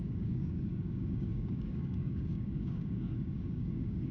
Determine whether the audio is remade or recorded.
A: remade